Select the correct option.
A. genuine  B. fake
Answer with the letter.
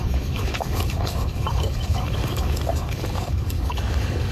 B